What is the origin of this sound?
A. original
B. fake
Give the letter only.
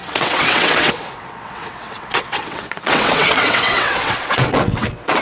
B